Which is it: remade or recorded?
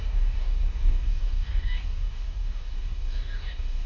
remade